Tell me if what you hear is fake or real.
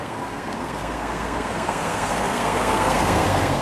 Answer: fake